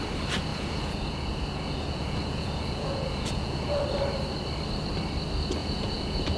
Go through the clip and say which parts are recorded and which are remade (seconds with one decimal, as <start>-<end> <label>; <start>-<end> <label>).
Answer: 0.0-0.5 recorded; 0.5-3.8 remade; 3.8-5.6 recorded; 5.6-6.4 remade